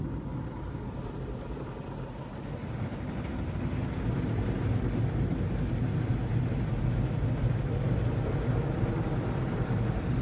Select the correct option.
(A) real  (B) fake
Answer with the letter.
A